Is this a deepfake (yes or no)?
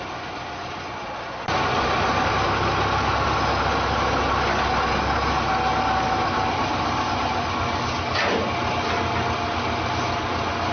no